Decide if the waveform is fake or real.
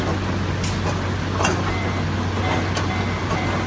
real